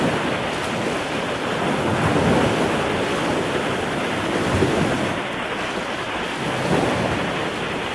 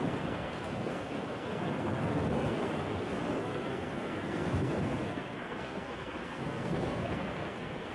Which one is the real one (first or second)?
first